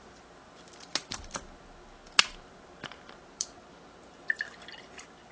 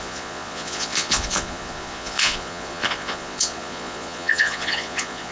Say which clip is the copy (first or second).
second